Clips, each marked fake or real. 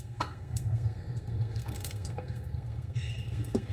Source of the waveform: fake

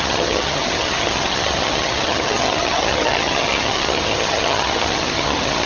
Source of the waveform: fake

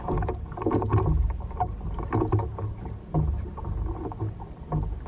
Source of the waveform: real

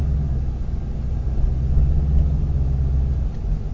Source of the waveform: real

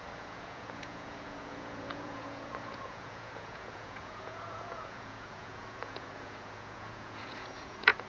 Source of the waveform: fake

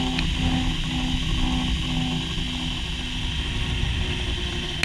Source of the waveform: real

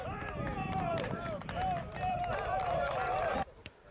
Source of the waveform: fake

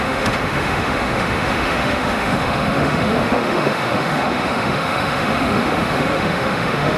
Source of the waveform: fake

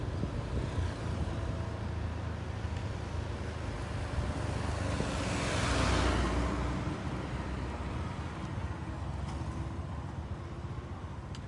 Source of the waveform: real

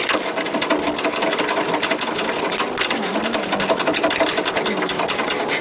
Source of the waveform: real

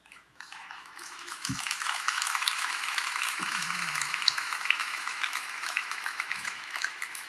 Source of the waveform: fake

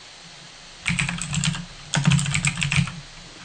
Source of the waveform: real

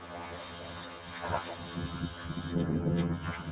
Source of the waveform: fake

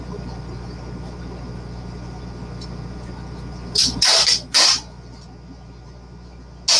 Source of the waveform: real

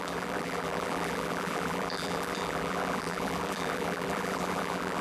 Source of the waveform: fake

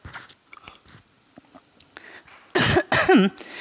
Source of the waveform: real